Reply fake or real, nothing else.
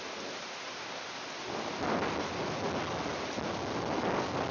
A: real